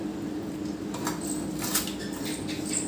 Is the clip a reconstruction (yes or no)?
no